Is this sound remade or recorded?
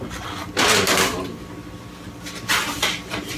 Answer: recorded